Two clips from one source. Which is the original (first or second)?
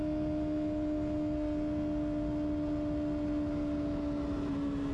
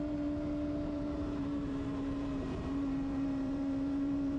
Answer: first